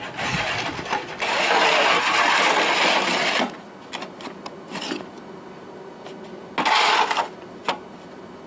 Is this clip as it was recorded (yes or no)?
yes